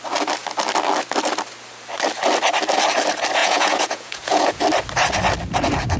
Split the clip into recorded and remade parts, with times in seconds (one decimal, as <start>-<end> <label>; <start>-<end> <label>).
0.0-3.4 recorded; 3.4-4.6 remade; 4.6-6.0 recorded